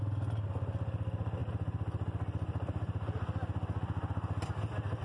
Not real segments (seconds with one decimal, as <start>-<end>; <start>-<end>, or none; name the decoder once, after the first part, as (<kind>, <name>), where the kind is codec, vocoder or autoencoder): none

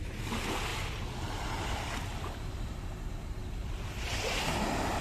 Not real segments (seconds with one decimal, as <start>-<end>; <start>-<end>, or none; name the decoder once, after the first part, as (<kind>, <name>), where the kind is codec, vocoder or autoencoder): 2.1-2.8 (vocoder, BigVGAN v2); 3.4-4.1

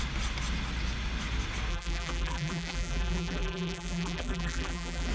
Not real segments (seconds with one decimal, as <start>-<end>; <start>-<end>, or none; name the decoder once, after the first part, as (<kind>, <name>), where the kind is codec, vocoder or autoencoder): 1.7-5.1 (vocoder, BigVGAN v2)

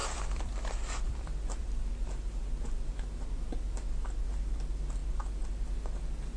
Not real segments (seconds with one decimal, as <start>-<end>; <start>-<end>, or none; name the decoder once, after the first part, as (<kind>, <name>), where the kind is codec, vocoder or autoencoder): 0.0-1.9 (vocoder, BigVGAN v2)

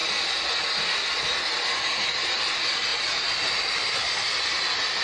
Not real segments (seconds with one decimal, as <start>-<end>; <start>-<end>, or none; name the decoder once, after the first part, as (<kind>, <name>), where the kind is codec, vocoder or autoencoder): 1.9-5.0 (vocoder, BigVGAN v2)

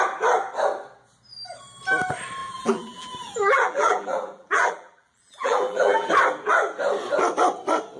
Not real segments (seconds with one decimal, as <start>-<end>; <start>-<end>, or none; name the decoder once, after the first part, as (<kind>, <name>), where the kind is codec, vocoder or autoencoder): 2.4-6.1 (vocoder, BigVGAN v2)

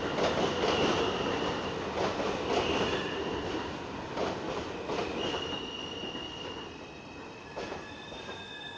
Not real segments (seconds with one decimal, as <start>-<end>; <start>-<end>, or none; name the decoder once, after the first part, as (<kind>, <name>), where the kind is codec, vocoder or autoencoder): 4.2-4.8 (vocoder, BigVGAN v2)